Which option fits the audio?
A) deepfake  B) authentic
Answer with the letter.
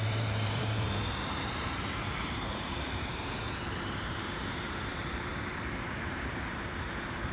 A